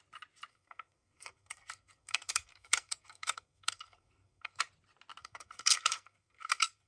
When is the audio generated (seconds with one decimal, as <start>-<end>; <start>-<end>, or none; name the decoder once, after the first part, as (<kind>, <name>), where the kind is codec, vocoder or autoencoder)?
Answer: 0.5-4.6 (codec, SNAC); 5.2-6.9